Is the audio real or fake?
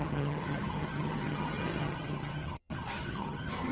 fake